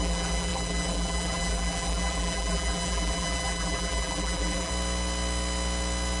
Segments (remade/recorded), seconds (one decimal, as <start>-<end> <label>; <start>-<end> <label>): 0.0-4.7 remade; 4.7-6.2 recorded